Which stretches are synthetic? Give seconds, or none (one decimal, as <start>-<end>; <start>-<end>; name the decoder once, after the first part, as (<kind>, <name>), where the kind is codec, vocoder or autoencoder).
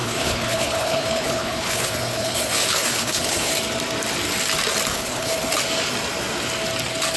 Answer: 0.0-3.5 (codec, HILCodec); 4.9-5.4